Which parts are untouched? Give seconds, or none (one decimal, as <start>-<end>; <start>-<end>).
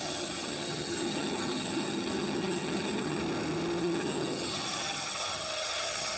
3.2-3.8